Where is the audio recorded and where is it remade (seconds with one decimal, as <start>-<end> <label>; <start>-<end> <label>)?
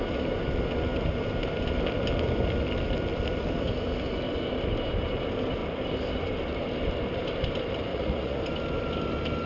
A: 0.0-7.9 recorded; 7.9-8.4 remade; 8.4-9.5 recorded